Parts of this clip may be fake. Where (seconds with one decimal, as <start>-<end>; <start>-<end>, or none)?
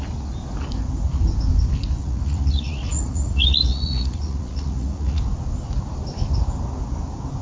2.0-5.2